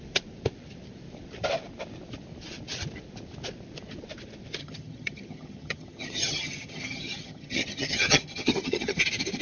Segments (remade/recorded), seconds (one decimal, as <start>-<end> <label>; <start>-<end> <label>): 0.0-4.6 recorded; 4.6-9.0 remade; 9.0-9.4 recorded